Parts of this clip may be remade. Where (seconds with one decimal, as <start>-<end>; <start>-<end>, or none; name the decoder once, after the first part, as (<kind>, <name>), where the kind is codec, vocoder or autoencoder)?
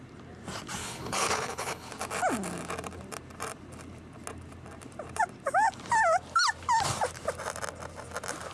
0.8-1.9 (codec, HILCodec)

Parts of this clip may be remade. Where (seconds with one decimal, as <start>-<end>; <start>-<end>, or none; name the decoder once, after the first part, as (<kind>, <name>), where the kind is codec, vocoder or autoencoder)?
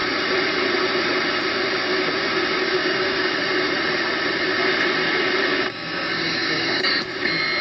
2.8-3.3 (codec, DAC); 5.5-6.9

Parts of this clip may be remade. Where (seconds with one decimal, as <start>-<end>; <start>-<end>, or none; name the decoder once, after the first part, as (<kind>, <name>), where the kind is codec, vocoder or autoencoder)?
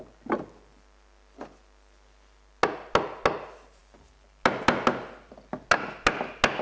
none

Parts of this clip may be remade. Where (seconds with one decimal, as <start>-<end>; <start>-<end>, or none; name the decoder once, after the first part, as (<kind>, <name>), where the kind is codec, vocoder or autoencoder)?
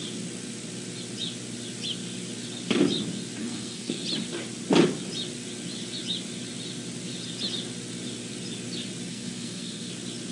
3.4-4.0 (codec, SNAC); 9.1-9.9